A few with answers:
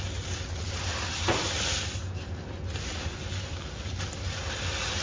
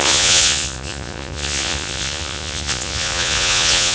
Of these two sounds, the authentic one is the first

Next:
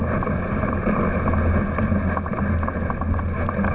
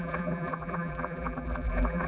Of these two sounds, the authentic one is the first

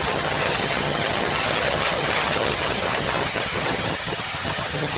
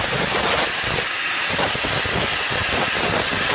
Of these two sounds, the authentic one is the second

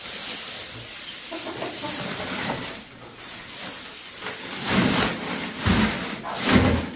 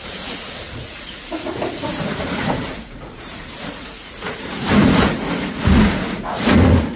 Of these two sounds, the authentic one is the first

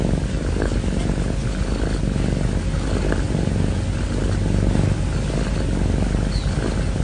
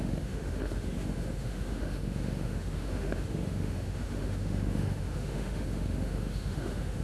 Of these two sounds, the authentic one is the first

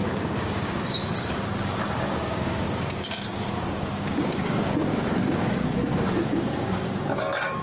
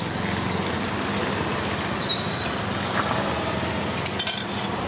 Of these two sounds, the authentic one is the second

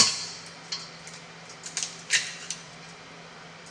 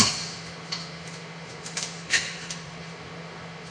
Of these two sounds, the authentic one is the first